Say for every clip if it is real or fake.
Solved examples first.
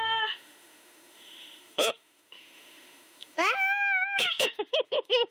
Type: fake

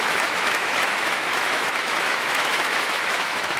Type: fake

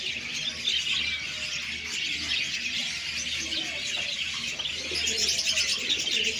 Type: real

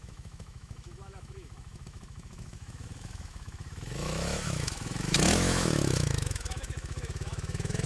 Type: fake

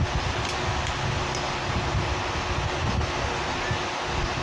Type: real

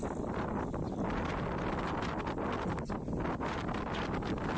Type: real